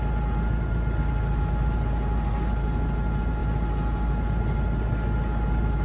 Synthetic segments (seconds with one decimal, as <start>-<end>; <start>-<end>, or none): none